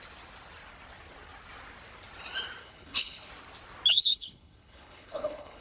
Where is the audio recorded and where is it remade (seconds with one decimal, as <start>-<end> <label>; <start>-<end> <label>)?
0.0-2.6 recorded; 2.6-3.3 remade; 3.3-3.9 recorded; 3.9-5.6 remade